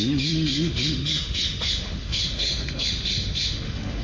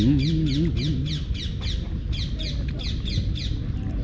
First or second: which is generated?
first